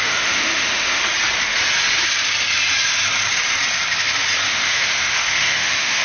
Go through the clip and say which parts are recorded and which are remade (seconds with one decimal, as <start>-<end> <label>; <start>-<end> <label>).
0.0-1.0 remade; 1.0-4.5 recorded; 4.5-6.0 remade